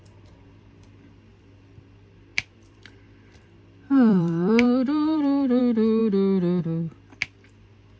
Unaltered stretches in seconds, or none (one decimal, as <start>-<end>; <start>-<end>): 0.0-2.3; 5.6-8.0